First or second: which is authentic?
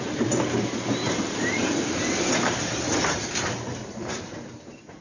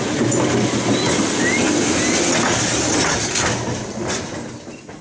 second